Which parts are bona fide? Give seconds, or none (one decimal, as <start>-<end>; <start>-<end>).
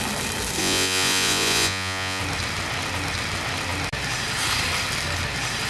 0.0-0.6; 2.2-5.7